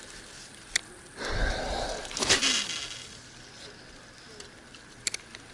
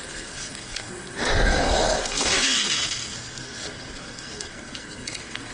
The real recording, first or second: first